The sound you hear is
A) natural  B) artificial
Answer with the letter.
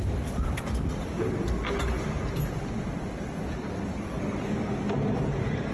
A